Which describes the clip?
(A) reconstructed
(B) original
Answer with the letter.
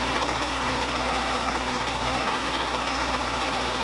A